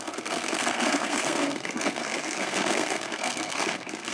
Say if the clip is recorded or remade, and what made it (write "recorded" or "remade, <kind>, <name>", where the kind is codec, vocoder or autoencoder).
remade, codec, SNAC